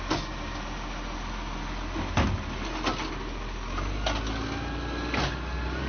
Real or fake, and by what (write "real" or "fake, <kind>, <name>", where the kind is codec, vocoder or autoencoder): real